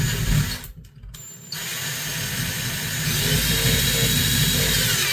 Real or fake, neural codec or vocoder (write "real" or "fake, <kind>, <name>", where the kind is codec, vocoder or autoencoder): real